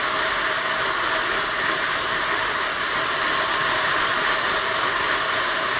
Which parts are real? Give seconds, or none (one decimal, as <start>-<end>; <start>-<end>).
0.0-5.8